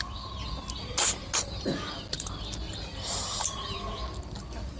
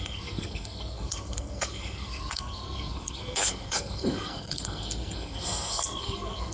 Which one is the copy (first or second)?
second